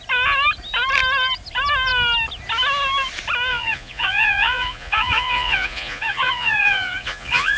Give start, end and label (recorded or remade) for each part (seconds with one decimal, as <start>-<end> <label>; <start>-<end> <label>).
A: 0.0-3.5 recorded; 3.5-7.6 remade